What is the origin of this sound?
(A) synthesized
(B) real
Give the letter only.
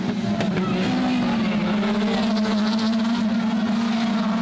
B